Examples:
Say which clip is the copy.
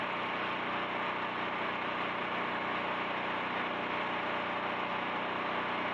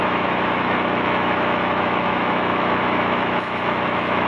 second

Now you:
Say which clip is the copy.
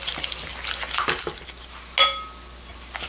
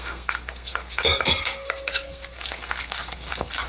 second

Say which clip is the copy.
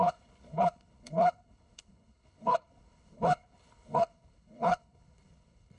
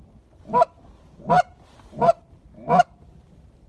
first